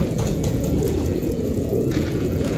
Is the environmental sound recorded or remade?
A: remade